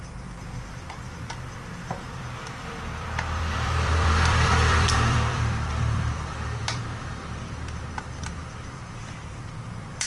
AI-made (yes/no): yes